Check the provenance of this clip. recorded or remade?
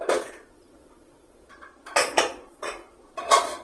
remade